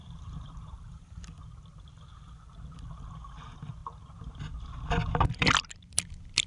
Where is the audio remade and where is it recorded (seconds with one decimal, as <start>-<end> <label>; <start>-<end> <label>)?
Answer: 0.0-1.2 remade; 1.2-6.5 recorded